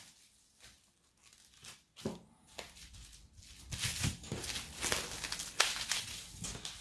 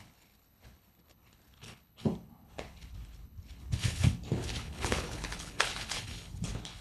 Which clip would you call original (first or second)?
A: first